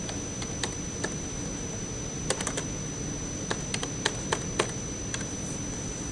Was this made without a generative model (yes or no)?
yes